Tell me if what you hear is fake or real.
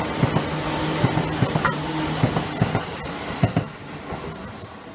real